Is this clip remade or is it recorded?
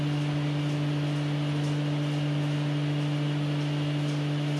recorded